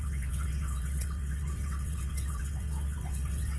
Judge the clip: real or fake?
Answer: fake